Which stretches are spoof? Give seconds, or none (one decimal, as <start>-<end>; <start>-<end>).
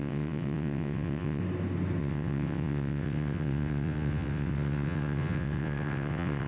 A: 0.0-1.4; 2.0-6.5